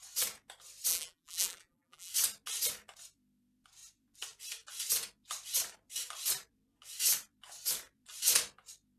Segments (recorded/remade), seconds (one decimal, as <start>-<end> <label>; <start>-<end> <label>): 0.0-0.9 recorded; 0.9-2.1 remade; 2.1-9.0 recorded